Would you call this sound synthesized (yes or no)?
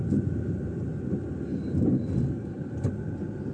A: no